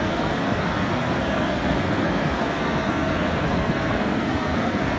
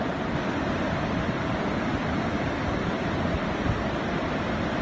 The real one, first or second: second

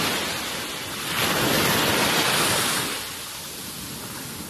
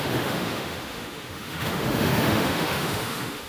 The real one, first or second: first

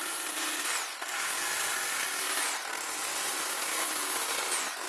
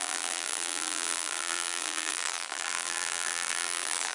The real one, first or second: first